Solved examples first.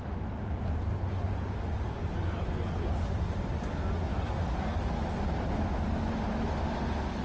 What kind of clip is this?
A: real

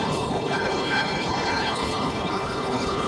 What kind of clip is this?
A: fake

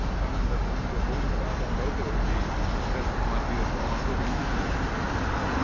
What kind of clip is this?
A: real